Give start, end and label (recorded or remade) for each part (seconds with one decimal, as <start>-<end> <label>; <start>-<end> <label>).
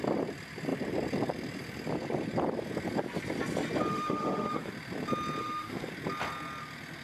0.0-3.9 recorded; 3.9-4.7 remade; 4.7-5.4 recorded; 5.4-5.9 remade; 5.9-7.0 recorded